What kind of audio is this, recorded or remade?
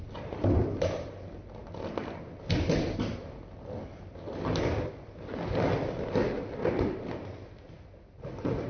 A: recorded